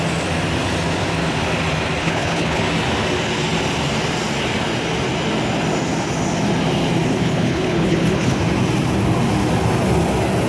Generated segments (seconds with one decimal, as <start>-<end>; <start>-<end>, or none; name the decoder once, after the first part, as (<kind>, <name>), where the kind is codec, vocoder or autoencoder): 2.0-2.6 (codec, HILCodec); 7.1-8.4